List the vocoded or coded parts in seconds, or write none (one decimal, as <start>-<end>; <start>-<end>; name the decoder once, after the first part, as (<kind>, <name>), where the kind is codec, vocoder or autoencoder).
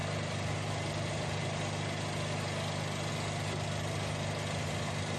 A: none